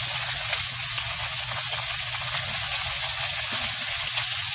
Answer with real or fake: fake